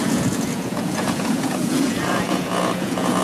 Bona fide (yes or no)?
no